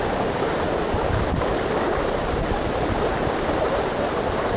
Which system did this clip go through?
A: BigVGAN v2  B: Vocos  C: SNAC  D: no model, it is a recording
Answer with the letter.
D